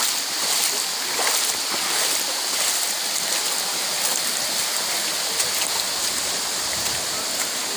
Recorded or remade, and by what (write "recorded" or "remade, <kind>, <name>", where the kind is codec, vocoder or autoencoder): recorded